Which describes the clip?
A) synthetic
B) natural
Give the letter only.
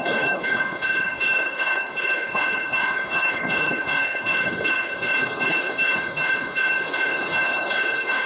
A